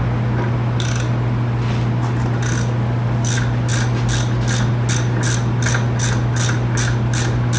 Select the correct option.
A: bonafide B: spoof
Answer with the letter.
A